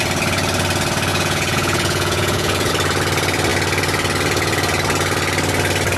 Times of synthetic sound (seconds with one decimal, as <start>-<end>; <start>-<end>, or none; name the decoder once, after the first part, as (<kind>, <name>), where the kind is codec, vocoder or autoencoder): 1.1-2.7 (vocoder, Vocos)

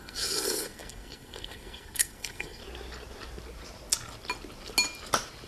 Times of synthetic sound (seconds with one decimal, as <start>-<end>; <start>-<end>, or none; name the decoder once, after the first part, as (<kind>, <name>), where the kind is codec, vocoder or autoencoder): 0.0-2.6 (codec, SNAC)